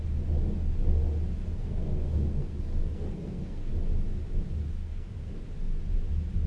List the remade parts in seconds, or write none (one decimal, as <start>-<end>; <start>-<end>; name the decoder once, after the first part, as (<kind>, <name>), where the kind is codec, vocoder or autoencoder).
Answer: 1.4-3.7 (codec, SNAC); 4.8-5.3